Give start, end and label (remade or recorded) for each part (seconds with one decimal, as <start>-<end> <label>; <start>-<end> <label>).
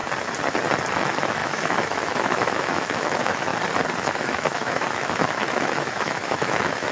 0.0-0.9 recorded; 0.9-3.5 remade; 3.5-4.0 recorded; 4.0-6.9 remade